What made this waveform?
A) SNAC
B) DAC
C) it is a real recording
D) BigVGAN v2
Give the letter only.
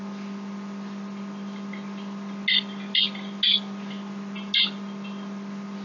C